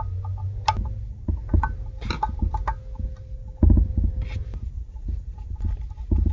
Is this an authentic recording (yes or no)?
yes